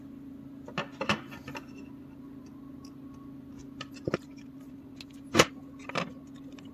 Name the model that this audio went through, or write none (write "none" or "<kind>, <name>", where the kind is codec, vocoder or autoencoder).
none